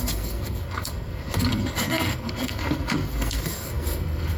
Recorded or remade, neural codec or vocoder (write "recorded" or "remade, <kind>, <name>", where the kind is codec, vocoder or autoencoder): remade, codec, SNAC